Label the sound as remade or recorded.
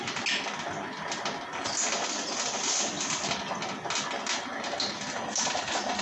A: recorded